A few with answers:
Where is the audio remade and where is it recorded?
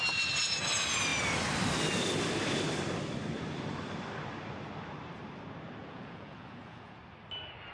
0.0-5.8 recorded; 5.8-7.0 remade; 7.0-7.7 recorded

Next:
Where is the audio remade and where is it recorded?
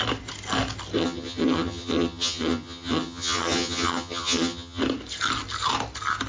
0.0-1.0 recorded; 1.0-4.8 remade; 4.8-6.3 recorded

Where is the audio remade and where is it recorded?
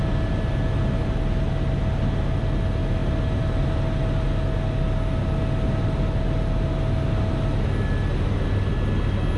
0.0-9.4 recorded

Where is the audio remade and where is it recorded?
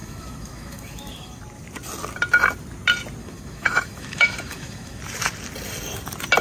0.0-1.4 remade; 1.4-3.2 recorded; 3.2-5.0 remade; 5.0-6.4 recorded